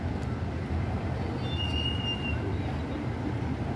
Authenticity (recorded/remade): recorded